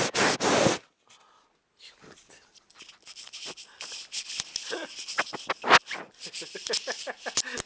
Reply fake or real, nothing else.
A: real